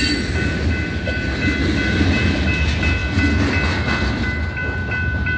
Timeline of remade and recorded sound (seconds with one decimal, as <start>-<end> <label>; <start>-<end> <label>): 0.0-5.4 recorded